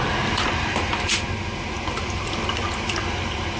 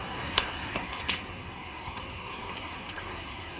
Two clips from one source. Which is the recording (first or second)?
first